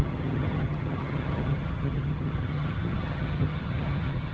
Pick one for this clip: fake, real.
fake